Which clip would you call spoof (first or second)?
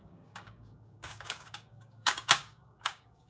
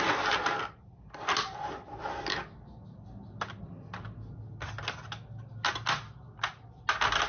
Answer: first